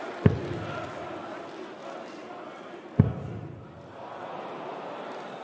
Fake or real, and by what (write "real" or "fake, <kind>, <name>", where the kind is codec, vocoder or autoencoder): real